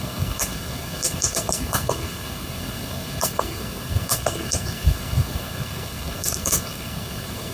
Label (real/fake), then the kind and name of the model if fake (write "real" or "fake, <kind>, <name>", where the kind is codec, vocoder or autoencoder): fake, codec, SNAC